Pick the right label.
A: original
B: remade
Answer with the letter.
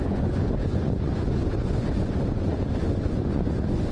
B